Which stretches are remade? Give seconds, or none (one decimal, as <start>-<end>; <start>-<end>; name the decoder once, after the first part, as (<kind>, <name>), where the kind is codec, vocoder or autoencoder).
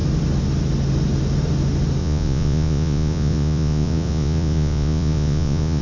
2.0-5.8 (vocoder, Vocos)